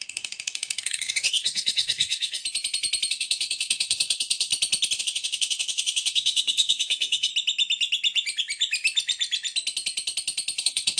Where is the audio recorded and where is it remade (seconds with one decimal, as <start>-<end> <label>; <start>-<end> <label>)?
0.0-2.4 remade; 2.4-3.1 recorded; 3.1-4.5 remade; 4.5-5.0 recorded; 5.0-7.3 remade; 7.3-10.6 recorded; 10.6-11.0 remade